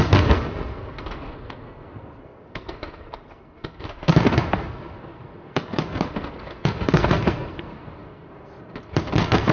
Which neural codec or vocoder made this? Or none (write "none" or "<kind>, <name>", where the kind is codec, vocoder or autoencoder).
codec, SNAC